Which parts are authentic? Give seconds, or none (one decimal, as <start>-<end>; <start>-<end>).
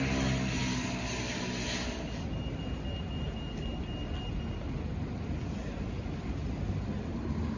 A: 0.0-7.6